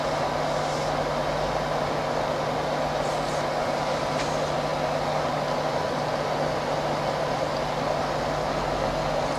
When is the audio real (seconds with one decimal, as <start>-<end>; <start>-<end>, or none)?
0.0-9.4